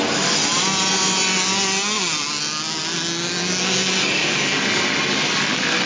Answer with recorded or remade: recorded